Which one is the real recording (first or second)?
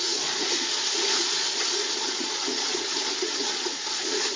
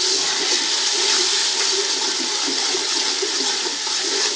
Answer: second